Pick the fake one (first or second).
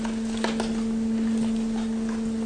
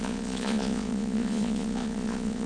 second